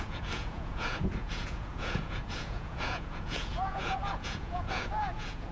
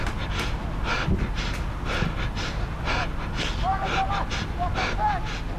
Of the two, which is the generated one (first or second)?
first